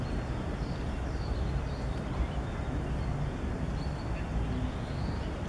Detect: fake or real real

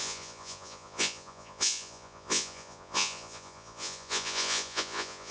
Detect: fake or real fake